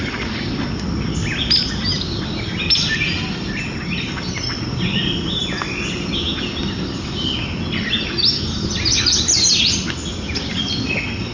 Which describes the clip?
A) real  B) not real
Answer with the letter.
A